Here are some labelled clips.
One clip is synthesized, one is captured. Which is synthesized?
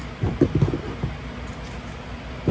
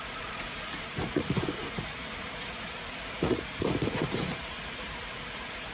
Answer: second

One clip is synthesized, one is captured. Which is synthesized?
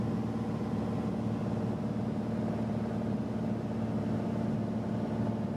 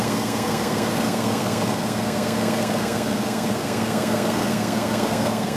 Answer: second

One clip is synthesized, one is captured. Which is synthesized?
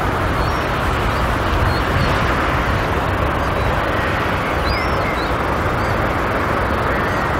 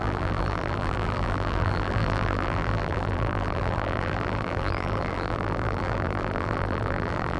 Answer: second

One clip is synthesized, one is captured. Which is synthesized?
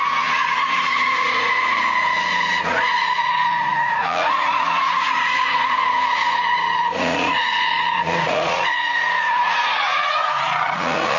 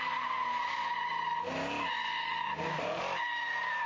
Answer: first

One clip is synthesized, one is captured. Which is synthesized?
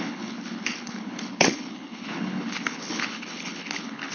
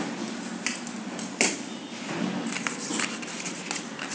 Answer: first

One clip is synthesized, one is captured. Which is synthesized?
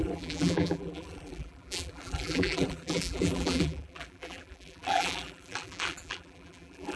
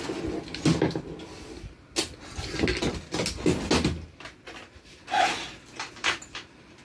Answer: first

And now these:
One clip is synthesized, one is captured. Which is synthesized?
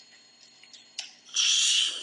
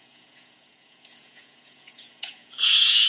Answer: second